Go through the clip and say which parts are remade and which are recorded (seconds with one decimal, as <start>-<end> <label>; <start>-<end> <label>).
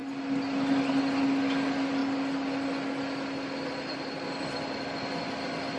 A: 0.0-5.8 recorded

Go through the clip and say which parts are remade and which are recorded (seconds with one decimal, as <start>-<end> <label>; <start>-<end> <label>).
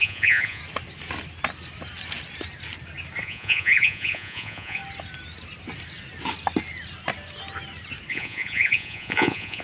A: 0.0-0.6 remade; 0.6-3.2 recorded; 3.2-4.8 remade; 4.8-8.1 recorded; 8.1-9.6 remade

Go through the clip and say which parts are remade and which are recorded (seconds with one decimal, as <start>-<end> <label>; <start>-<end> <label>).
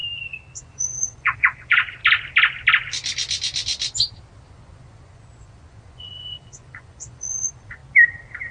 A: 0.0-0.6 recorded; 0.6-2.0 remade; 2.0-4.5 recorded; 4.5-7.8 remade; 7.8-8.5 recorded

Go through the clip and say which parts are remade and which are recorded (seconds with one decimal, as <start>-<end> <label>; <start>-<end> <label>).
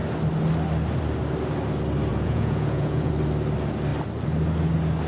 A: 0.0-2.1 recorded; 2.1-3.1 remade; 3.1-5.1 recorded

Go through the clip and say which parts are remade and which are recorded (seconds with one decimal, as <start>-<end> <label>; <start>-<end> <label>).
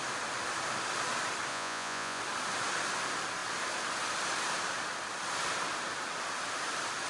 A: 0.0-1.5 recorded; 1.5-2.2 remade; 2.2-7.1 recorded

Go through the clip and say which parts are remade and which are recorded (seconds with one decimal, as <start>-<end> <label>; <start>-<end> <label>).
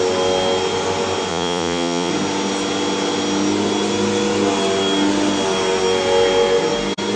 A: 0.0-1.3 recorded; 1.3-2.1 remade; 2.1-7.2 recorded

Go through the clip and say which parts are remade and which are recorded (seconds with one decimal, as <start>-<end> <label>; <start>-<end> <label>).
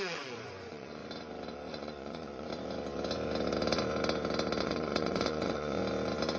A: 0.0-1.0 remade; 1.0-1.7 recorded; 1.7-2.5 remade; 2.5-4.6 recorded; 4.6-5.8 remade; 5.8-6.4 recorded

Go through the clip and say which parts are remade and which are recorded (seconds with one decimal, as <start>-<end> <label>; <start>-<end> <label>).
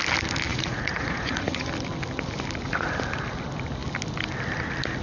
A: 0.0-0.5 recorded; 0.5-1.7 remade; 1.7-5.0 recorded